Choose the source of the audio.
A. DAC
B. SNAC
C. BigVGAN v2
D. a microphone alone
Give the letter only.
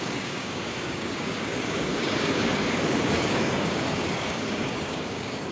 A